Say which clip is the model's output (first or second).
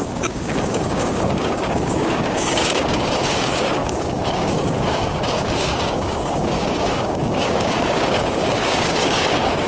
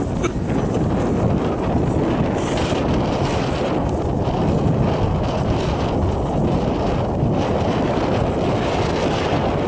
first